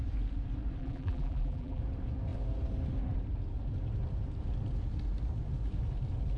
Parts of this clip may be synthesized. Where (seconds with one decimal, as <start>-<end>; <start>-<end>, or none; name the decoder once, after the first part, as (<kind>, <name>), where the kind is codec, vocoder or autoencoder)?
0.8-1.8 (vocoder, BigVGAN v2)